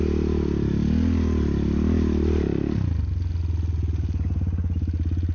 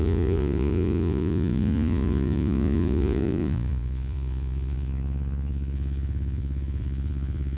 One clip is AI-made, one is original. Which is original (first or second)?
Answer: first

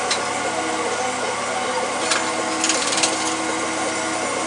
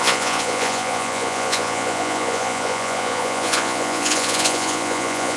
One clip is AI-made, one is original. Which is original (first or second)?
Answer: first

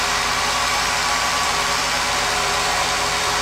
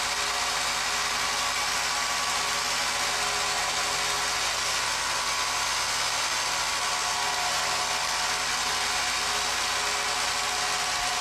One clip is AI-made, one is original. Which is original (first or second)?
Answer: second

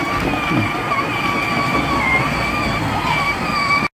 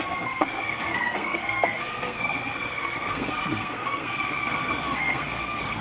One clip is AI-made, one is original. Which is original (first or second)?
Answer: first